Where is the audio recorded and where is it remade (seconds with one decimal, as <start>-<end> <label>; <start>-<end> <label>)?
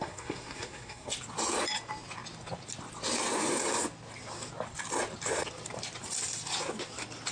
0.0-1.1 remade; 1.1-7.3 recorded